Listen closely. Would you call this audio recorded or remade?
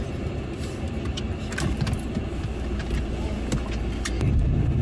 recorded